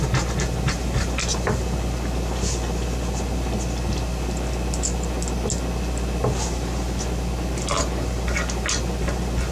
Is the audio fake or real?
real